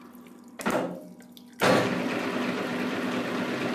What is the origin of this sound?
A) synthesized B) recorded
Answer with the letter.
B